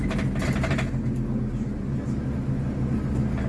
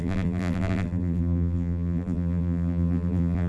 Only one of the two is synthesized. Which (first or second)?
second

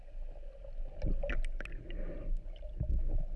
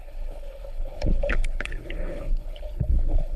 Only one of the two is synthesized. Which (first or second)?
second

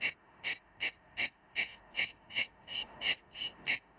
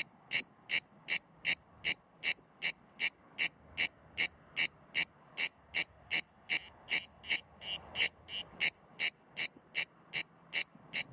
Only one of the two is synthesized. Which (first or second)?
first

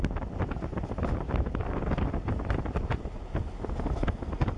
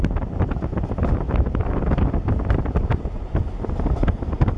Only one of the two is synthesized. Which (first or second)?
second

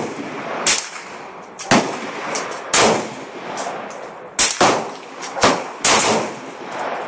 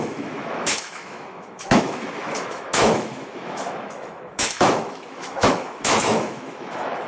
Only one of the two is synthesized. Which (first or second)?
second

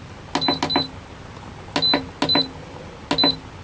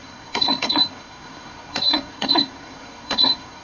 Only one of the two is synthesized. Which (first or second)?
second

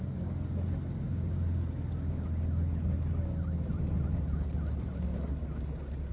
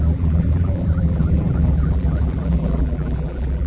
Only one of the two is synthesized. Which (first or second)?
second